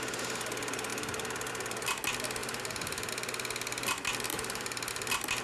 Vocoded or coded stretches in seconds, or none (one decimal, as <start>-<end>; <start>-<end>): 2.4-3.1; 4.3-4.9